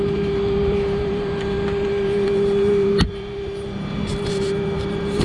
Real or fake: fake